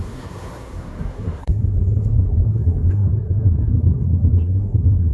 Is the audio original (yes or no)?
no